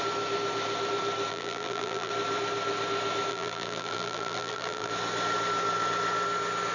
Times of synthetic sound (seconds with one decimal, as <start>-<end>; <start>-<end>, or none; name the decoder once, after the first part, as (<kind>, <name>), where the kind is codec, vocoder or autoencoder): 1.3-2.1 (vocoder, BigVGAN v2); 3.3-4.9